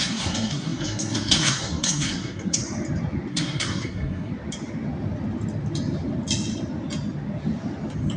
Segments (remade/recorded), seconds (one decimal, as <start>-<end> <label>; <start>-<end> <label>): 0.0-2.6 remade; 2.6-3.3 recorded; 3.3-4.3 remade; 4.3-8.2 recorded